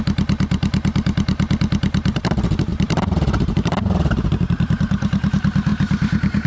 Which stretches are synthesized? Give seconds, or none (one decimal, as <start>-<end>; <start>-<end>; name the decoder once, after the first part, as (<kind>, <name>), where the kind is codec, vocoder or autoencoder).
2.7-5.3 (vocoder, BigVGAN v2); 5.7-6.5